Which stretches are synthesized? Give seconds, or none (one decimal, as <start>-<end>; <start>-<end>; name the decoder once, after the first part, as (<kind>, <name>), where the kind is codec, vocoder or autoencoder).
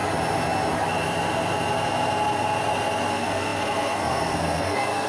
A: 3.1-5.1 (codec, SNAC)